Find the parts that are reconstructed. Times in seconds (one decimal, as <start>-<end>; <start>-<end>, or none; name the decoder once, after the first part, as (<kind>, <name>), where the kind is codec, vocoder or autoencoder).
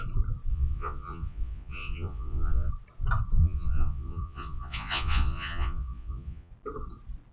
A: 0.5-2.7 (vocoder, Vocos); 3.4-6.5